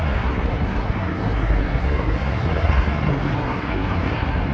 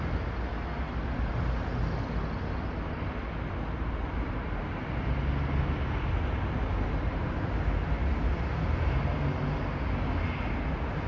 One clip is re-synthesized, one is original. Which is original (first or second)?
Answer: second